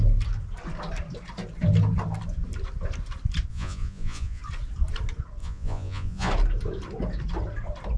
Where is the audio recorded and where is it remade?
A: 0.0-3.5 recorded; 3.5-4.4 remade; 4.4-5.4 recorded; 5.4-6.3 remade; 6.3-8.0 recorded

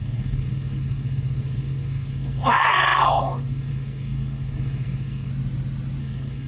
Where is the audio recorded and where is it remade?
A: 0.0-5.3 remade; 5.3-6.0 recorded; 6.0-6.5 remade

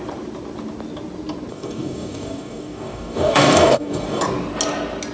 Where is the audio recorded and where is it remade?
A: 0.0-1.5 recorded; 1.5-4.2 remade; 4.2-5.1 recorded

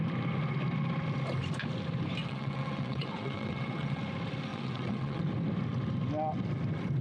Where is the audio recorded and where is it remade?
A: 0.0-2.2 recorded; 2.2-4.0 remade; 4.0-4.5 recorded; 4.5-5.2 remade; 5.2-7.0 recorded

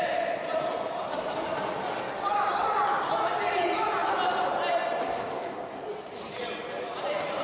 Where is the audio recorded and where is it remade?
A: 0.0-7.4 recorded

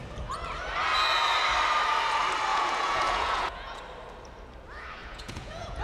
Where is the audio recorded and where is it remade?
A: 0.0-2.5 recorded; 2.5-3.8 remade; 3.8-5.0 recorded; 5.0-5.8 remade